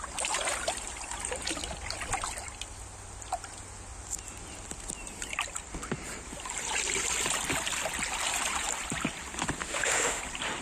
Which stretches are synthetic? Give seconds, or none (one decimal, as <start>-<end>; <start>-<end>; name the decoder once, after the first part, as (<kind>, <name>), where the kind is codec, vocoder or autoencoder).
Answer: 9.6-10.2 (autoencoder, DAC-VAE)